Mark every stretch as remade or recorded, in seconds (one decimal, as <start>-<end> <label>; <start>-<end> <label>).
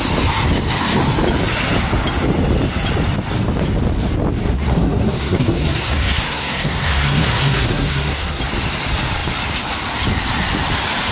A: 0.0-4.4 recorded; 4.4-8.4 remade; 8.4-11.1 recorded